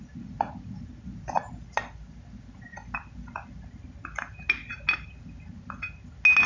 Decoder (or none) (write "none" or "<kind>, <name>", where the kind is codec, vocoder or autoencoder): none